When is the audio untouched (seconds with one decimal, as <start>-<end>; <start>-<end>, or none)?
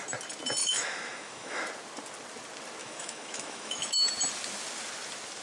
0.0-0.6; 1.6-2.8; 4.1-5.4